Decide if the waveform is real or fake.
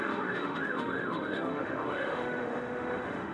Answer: fake